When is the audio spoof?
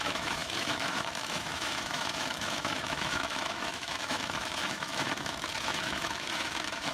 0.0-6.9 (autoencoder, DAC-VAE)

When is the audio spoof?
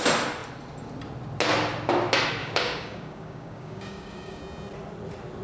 2.4-4.4 (codec, DAC)